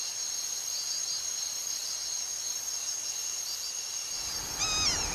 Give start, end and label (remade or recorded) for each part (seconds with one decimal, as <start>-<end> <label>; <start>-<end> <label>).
0.0-5.1 recorded